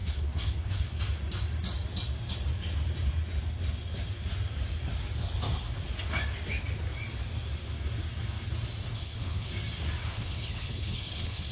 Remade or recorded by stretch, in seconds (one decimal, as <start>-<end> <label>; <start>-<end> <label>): 0.0-1.0 remade; 1.0-8.9 recorded; 8.9-9.5 remade; 9.5-10.0 recorded; 10.0-11.5 remade